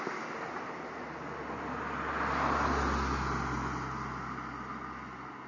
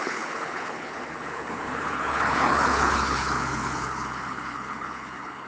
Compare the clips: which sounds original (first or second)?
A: first